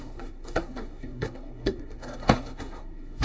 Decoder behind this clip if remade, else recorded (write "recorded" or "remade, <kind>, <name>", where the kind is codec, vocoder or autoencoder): remade, codec, SNAC